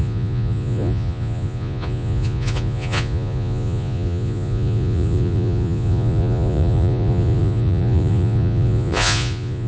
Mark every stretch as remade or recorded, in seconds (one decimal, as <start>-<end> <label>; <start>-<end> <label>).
0.0-9.7 remade